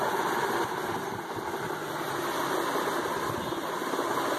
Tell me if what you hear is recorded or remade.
recorded